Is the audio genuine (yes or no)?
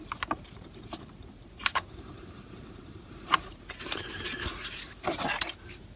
no